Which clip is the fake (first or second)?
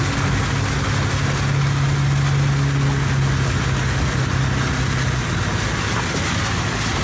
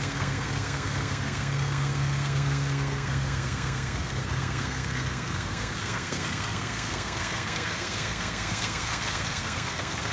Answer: second